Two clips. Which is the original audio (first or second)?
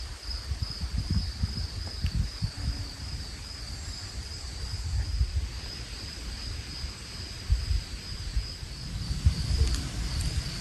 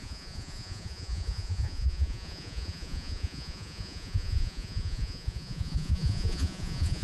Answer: first